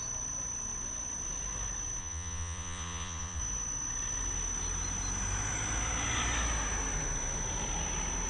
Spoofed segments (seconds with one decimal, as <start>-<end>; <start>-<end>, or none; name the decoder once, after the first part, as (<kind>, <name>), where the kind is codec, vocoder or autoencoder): 2.0-3.4 (vocoder, Vocos)

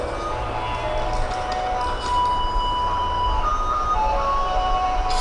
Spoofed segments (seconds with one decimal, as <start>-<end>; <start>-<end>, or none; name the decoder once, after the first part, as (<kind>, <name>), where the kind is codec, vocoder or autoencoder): none

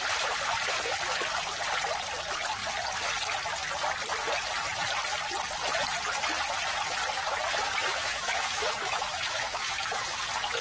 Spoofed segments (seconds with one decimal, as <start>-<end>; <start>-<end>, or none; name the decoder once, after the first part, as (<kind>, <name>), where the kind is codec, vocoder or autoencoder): 7.8-10.2 (autoencoder, DAC-VAE)

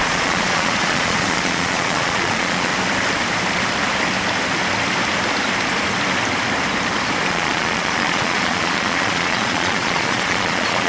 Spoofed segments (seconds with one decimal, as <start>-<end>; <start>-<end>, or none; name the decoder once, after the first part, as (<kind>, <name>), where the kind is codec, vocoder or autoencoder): 0.0-2.7 (vocoder, Vocos); 7.3-10.9

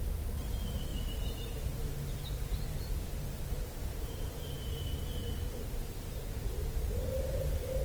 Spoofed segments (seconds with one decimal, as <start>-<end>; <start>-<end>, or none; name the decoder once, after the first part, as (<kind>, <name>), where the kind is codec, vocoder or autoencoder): 0.9-1.7 (vocoder, BigVGAN v2); 2.2-4.5; 5.2-6.6; 7.1-7.8

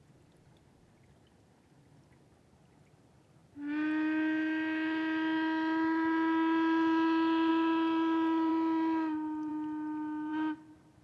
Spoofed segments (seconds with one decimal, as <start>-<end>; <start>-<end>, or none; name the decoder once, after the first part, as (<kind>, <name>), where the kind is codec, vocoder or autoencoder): none

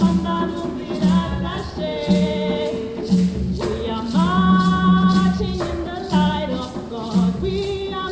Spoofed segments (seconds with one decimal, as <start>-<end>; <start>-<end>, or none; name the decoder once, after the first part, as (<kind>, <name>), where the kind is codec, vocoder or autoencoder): none